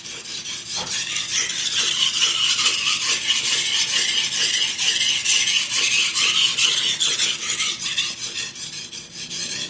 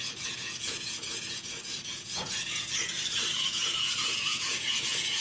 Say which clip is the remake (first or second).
second